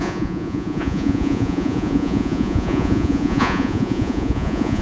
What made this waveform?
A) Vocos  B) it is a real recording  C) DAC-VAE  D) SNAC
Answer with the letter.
A